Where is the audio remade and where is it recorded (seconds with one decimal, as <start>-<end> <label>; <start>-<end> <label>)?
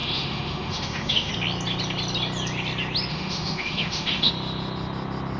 0.0-1.3 remade; 1.3-3.1 recorded; 3.1-4.3 remade; 4.3-5.4 recorded